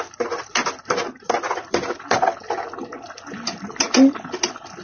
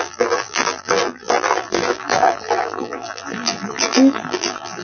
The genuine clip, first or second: first